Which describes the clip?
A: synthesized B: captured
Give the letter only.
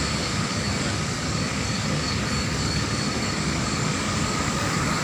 A